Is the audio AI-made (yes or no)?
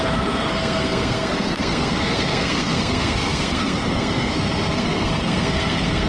yes